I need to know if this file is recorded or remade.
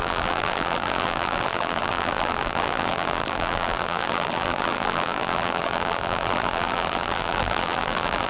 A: remade